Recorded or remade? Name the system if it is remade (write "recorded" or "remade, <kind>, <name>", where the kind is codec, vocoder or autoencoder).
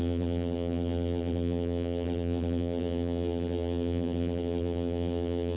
remade, vocoder, BigVGAN v2